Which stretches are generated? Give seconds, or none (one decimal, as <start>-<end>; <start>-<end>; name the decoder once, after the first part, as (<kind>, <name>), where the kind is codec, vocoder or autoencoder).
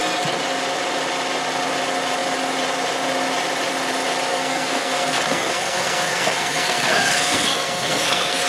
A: 4.3-8.5 (codec, SNAC)